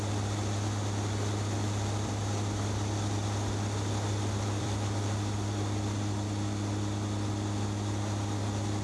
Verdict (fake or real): fake